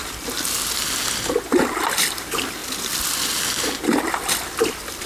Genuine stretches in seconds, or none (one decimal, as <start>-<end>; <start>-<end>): 0.0-5.1